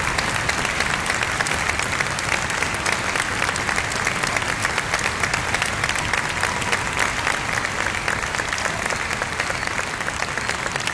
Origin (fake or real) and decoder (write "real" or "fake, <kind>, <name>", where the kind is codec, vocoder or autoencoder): real